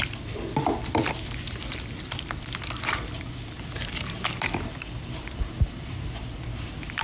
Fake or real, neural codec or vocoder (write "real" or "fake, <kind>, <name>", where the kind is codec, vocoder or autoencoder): fake, vocoder, BigVGAN v2